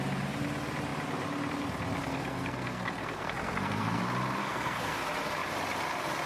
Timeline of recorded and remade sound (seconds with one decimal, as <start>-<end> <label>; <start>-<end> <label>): 0.0-2.0 recorded; 2.0-4.0 remade; 4.0-4.4 recorded; 4.4-5.0 remade; 5.0-6.3 recorded